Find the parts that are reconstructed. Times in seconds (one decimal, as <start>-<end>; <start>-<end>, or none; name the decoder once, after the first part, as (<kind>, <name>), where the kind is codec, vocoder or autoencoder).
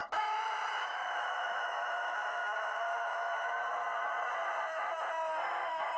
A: 0.0-3.6 (autoencoder, DAC-VAE)